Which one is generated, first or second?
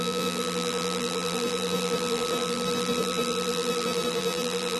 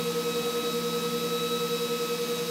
first